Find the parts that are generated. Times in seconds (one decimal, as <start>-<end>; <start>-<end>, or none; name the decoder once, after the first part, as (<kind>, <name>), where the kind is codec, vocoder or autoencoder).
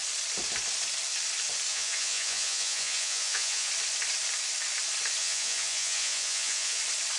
1.7-3.7 (vocoder, Vocos); 5.2-6.8